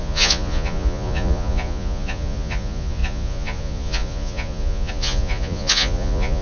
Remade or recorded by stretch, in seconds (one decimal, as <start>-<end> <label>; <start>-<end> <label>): 0.0-6.4 remade

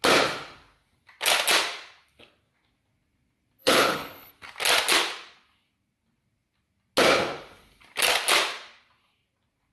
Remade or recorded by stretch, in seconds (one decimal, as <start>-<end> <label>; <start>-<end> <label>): 0.0-3.6 recorded; 3.6-4.3 remade; 4.3-9.7 recorded